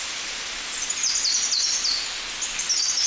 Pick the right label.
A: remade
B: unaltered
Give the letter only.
B